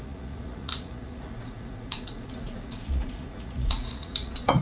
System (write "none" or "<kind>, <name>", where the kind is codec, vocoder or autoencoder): vocoder, Vocos